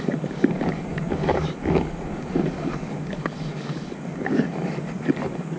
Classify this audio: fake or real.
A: fake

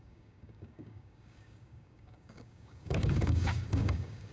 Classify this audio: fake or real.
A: fake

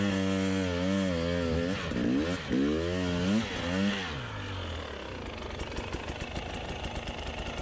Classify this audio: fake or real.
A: real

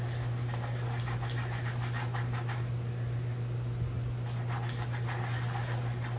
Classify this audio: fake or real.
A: real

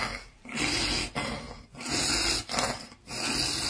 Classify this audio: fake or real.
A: real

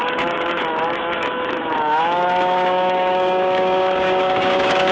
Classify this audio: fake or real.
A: fake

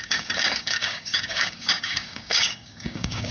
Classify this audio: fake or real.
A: fake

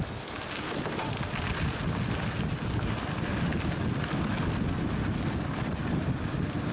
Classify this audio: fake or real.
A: real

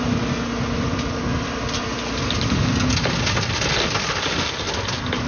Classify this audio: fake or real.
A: real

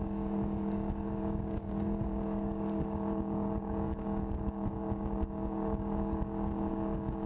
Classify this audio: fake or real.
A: fake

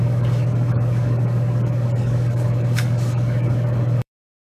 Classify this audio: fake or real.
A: fake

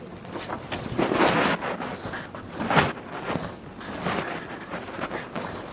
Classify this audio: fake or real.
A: real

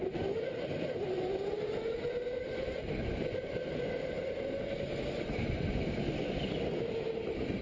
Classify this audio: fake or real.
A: real